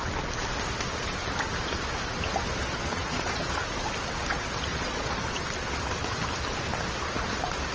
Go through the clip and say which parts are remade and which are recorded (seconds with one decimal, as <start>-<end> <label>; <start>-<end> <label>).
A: 0.0-2.6 recorded; 2.6-3.6 remade; 3.6-4.7 recorded; 4.7-5.2 remade; 5.2-7.7 recorded